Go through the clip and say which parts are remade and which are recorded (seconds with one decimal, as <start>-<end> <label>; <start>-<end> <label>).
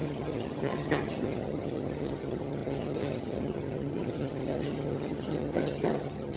0.0-6.4 remade